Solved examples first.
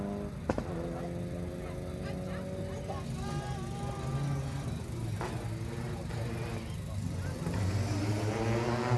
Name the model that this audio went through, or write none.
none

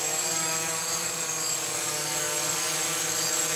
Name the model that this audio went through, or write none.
codec, DAC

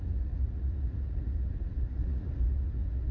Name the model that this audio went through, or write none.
vocoder, Vocos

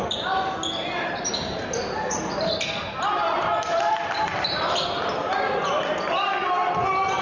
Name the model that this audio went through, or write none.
none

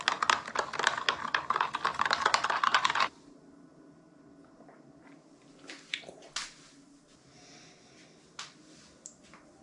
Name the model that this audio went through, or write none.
none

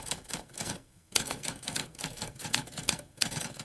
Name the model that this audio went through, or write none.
codec, SNAC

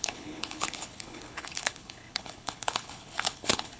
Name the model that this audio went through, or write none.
codec, HILCodec